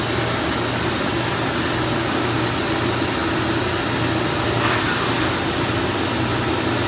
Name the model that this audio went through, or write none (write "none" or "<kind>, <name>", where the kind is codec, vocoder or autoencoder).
none